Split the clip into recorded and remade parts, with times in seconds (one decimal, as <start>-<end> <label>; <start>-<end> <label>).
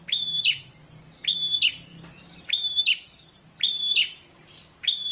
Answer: 0.0-1.9 recorded; 1.9-5.1 remade